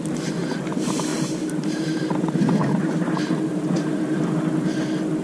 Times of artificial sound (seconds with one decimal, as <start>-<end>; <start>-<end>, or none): 1.1-4.2